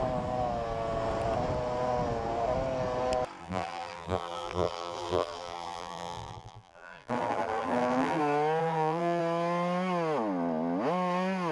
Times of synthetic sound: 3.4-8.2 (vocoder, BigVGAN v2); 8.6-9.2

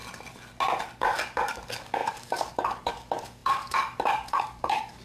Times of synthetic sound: 1.0-5.0 (codec, DAC)

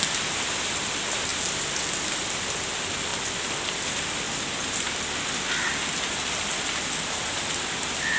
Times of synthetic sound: none

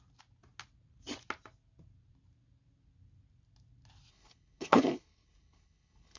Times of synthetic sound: 4.1-6.2 (codec, HILCodec)